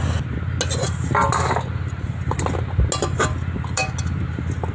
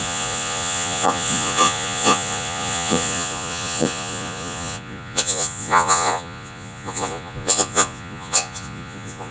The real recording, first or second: first